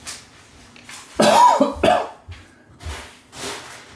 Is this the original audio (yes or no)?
yes